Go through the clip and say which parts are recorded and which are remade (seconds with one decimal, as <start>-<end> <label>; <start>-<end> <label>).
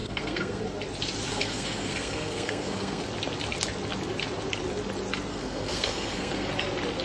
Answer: 0.0-0.6 remade; 0.6-1.3 recorded; 1.3-3.0 remade; 3.0-5.3 recorded; 5.3-6.5 remade; 6.5-7.0 recorded